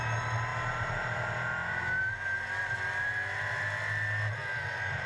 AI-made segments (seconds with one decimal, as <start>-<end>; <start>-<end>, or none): none